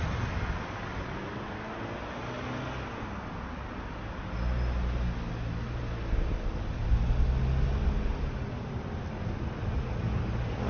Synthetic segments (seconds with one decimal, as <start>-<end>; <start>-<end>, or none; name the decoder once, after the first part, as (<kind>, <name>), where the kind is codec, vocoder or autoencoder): none